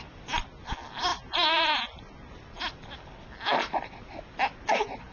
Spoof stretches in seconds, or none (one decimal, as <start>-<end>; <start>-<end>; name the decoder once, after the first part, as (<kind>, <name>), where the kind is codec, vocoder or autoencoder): none